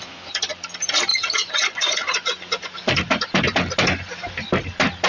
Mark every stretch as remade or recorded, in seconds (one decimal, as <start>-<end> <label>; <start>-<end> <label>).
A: 0.0-1.1 recorded; 1.1-2.8 remade; 2.8-5.1 recorded